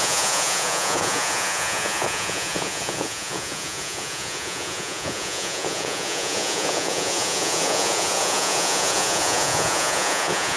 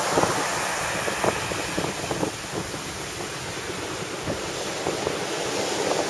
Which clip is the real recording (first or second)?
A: second